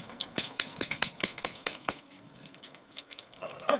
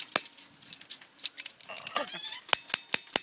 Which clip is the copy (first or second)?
first